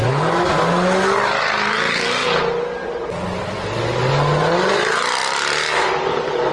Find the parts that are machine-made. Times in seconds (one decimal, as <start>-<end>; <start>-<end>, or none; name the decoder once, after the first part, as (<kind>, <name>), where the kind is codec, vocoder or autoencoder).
none